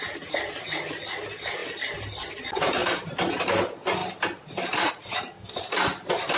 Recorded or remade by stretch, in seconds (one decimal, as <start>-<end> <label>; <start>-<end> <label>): 0.0-6.4 recorded